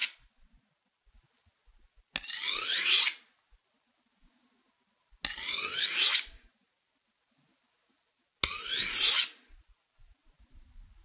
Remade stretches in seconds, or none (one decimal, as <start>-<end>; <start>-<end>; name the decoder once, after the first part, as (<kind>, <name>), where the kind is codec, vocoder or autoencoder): none